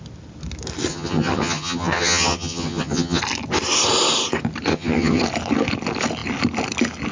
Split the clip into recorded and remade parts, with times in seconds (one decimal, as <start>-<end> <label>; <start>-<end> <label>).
0.0-0.9 recorded; 0.9-3.2 remade; 3.2-4.7 recorded; 4.7-5.2 remade; 5.2-7.1 recorded